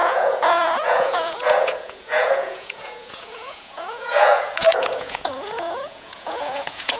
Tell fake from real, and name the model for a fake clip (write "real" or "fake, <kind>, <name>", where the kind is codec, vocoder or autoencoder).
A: fake, vocoder, Vocos